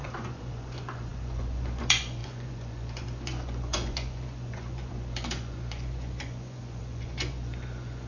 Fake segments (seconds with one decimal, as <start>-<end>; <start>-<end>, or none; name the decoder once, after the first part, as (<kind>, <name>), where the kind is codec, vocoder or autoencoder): 0.0-8.1 (vocoder, Vocos)